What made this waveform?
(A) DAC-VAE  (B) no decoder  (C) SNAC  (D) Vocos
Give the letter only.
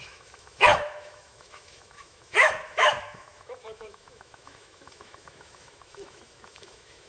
A